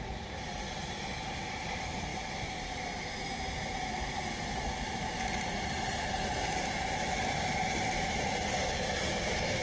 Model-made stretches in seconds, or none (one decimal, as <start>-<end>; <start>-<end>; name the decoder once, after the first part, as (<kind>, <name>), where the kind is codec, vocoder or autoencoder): 0.0-2.1 (vocoder, BigVGAN v2); 3.0-9.6

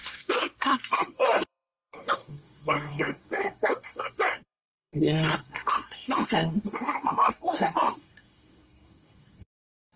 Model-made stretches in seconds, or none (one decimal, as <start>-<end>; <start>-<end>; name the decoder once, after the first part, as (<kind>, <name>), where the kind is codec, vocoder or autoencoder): 0.0-10.0 (codec, SNAC)

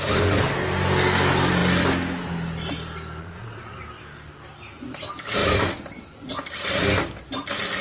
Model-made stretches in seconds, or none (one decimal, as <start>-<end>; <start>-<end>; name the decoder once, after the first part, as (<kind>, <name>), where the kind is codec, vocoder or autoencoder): 3.2-3.8 (vocoder, Vocos)

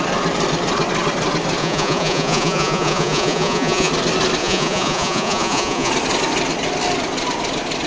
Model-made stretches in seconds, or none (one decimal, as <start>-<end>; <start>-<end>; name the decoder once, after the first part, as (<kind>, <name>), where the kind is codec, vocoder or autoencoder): 1.6-3.9 (vocoder, Vocos); 4.4-5.9

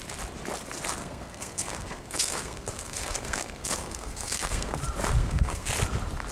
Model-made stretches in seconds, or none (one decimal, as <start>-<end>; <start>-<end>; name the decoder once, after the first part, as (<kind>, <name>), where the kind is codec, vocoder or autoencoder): 1.0-4.8 (codec, SNAC); 5.2-5.7

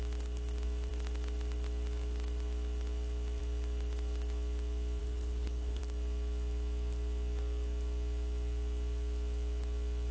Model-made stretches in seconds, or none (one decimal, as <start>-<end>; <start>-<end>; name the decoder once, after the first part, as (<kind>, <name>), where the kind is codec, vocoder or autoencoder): 5.0-5.8 (codec, HILCodec)

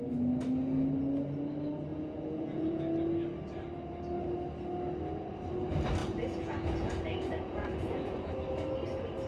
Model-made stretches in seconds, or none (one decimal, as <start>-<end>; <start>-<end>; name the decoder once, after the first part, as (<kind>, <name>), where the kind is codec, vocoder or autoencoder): 1.9-2.8 (vocoder, Vocos); 6.0-8.3

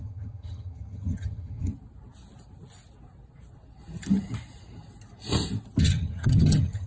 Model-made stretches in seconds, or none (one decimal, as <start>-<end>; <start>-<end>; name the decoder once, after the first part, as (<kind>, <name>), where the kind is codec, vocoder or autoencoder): 0.0-1.7 (vocoder, HiFi-GAN); 5.8-6.9